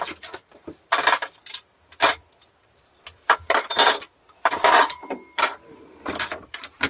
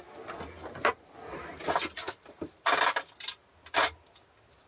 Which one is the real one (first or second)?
second